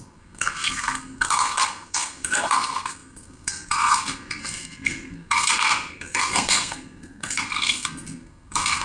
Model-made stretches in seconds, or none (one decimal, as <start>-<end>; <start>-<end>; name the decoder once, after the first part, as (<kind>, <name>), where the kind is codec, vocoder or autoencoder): 0.0-8.8 (codec, SNAC)